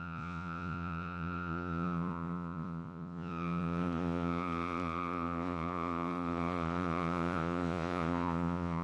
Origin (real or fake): fake